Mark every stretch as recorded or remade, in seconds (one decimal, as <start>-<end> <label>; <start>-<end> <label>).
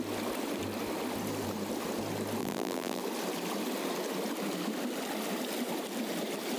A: 0.0-2.4 recorded; 2.4-3.0 remade; 3.0-6.6 recorded